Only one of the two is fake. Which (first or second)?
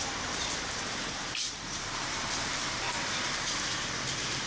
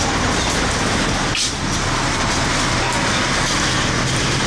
first